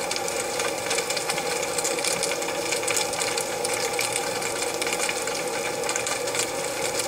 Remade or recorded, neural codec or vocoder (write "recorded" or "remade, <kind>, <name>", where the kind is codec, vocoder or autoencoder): recorded